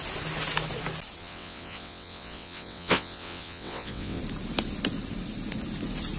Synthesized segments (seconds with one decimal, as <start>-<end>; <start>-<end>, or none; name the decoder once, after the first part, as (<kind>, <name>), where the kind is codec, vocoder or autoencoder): 1.2-4.2 (vocoder, WaveNeXt)